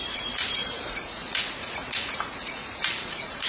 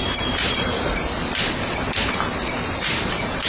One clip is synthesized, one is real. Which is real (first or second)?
second